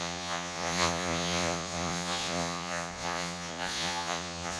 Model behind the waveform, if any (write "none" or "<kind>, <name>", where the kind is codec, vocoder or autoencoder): vocoder, Vocos